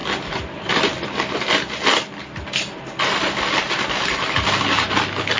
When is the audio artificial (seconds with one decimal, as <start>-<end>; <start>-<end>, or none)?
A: none